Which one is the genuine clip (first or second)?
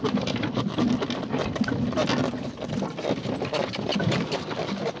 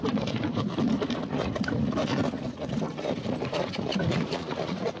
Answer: first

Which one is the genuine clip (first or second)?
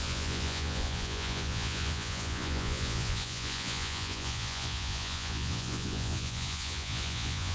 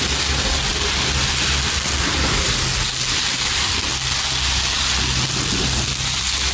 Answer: second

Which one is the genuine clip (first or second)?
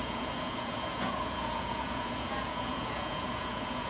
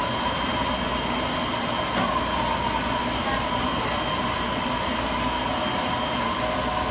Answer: second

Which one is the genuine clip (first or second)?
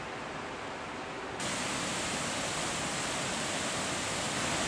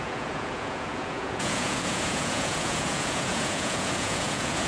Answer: first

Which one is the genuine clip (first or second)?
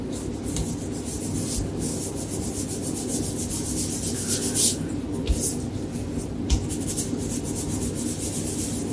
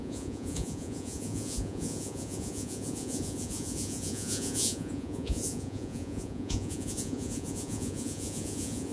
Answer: first